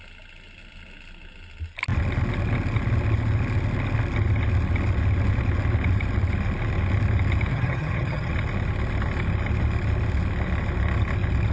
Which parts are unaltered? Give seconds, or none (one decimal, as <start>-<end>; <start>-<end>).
0.0-7.5; 8.3-11.5